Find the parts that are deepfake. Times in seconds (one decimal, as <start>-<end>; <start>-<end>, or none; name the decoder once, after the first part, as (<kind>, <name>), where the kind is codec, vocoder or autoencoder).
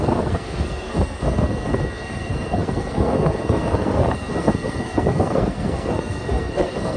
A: 0.0-7.0 (codec, SNAC)